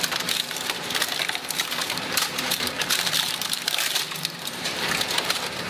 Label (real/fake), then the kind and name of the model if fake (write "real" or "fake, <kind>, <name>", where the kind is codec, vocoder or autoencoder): fake, vocoder, BigVGAN v2